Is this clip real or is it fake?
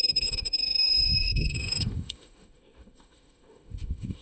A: fake